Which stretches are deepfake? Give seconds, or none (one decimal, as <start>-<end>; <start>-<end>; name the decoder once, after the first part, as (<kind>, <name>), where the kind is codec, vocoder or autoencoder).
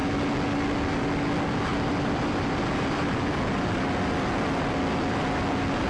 1.7-4.3 (vocoder, BigVGAN v2)